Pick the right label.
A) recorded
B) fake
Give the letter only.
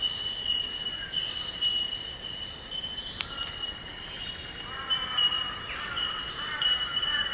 A